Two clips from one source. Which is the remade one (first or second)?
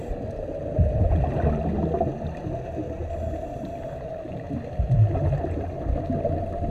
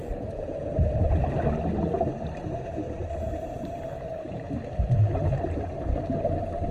second